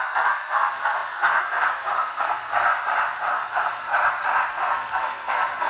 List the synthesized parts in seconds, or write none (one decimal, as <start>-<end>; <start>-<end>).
0.0-2.7; 3.3-3.9; 4.5-5.7